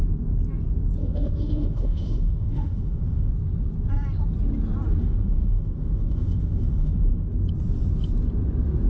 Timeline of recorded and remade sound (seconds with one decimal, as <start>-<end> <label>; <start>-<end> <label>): 0.0-1.0 recorded; 1.0-3.3 remade; 3.3-5.0 recorded; 5.0-7.3 remade; 7.3-8.9 recorded